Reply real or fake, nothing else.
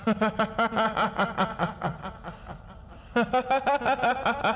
real